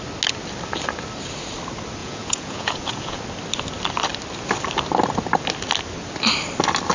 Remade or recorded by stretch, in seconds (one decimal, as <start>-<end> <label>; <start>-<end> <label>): 0.0-2.0 recorded; 2.0-3.2 remade; 3.2-6.9 recorded